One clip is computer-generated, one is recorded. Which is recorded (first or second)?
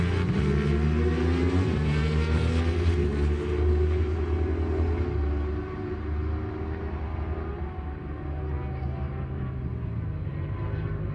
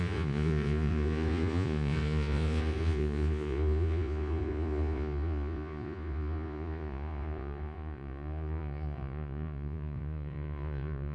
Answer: first